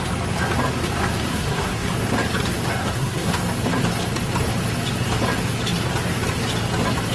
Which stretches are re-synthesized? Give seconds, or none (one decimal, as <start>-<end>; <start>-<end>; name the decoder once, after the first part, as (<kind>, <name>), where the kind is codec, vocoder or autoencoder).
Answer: 1.3-1.9 (codec, SNAC); 2.8-3.3